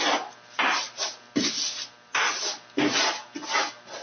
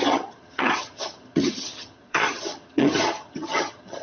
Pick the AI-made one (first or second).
second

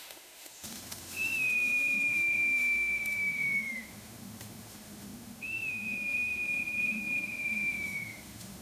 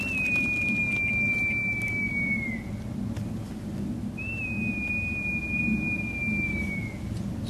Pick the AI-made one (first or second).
first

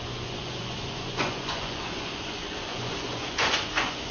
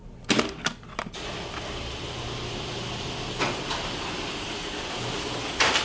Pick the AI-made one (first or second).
first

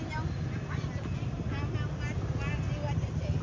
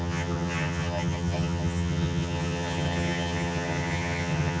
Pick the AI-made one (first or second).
second